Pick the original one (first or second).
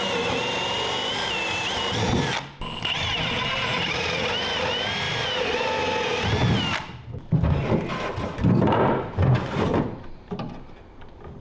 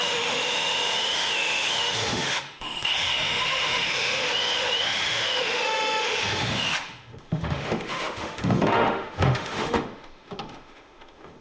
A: first